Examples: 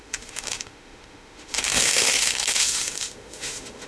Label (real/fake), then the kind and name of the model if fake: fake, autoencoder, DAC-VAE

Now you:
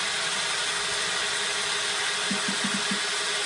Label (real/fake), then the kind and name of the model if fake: real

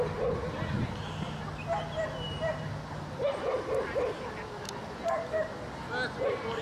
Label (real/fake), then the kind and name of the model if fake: real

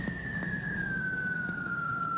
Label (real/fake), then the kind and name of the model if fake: fake, codec, DAC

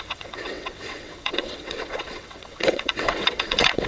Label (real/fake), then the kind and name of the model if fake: fake, vocoder, WaveNeXt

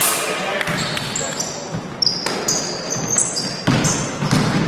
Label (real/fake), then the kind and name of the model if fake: real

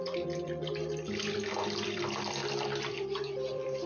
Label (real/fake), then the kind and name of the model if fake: real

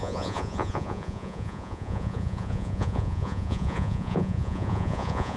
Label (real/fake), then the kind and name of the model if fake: fake, vocoder, Vocos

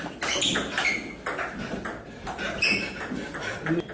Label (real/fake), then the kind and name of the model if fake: real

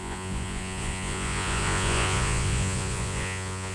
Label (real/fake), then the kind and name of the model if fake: fake, vocoder, Vocos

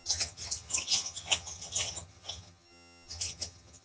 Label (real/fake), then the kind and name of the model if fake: fake, vocoder, HiFi-GAN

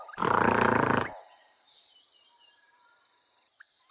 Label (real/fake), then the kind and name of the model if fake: fake, vocoder, BigVGAN v2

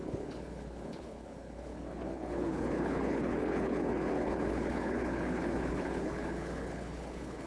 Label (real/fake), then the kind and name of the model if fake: fake, codec, HILCodec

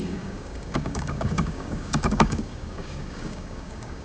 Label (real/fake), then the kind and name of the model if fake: fake, codec, DAC